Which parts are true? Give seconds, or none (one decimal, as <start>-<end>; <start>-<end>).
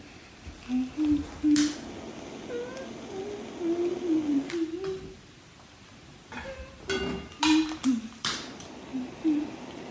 0.0-9.9